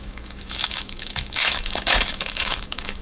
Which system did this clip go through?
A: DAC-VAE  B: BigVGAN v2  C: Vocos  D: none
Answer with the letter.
A